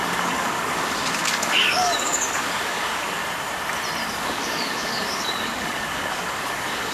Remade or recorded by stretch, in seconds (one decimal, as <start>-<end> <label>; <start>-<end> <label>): 0.0-3.2 remade; 3.2-4.1 recorded; 4.1-6.9 remade